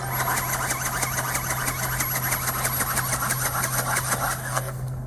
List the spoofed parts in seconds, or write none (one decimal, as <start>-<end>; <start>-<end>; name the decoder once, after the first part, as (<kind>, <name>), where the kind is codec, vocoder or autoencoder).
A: 4.4-5.1 (codec, SNAC)